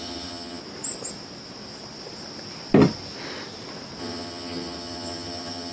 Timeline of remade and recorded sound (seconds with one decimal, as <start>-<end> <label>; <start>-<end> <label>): 0.0-0.6 remade; 0.6-4.0 recorded; 4.0-5.7 remade